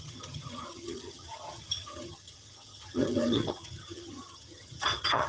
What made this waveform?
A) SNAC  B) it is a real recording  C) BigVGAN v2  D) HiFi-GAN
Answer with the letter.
D